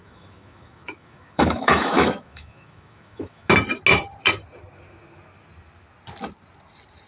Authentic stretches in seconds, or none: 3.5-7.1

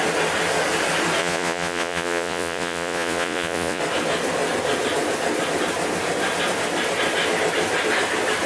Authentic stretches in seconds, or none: 0.0-1.2; 3.8-8.5

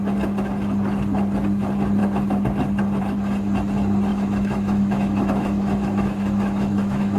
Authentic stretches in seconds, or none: 0.0-4.1

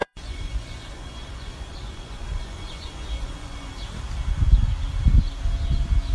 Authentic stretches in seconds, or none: 3.7-6.1

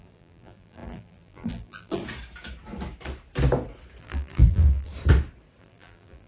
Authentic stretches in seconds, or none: 2.0-4.0; 4.9-5.6